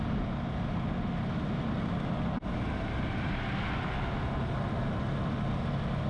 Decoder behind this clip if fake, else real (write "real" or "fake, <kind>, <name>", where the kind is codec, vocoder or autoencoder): real